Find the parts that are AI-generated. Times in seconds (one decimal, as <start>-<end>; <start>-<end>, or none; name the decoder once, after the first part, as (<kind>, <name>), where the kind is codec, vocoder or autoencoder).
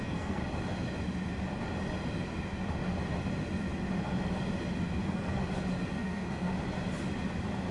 0.0-0.4 (codec, SNAC); 5.0-5.4; 5.9-6.5